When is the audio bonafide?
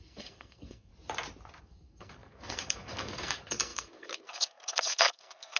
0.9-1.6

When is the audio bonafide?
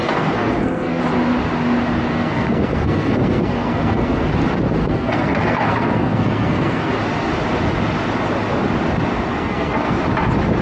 1.0-2.1; 4.3-4.8; 6.9-9.3; 10.0-10.6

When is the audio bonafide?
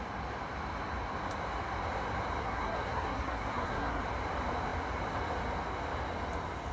0.0-2.4; 4.0-6.7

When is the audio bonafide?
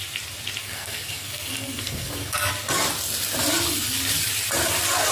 0.0-0.6; 2.5-5.1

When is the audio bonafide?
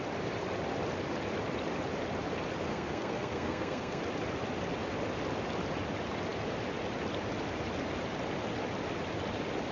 0.0-2.7; 4.0-9.7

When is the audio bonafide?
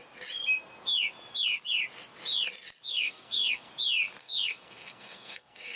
0.0-2.9; 3.7-4.2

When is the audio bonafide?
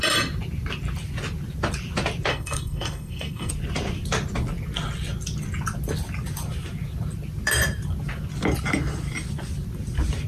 0.0-2.3; 3.5-10.3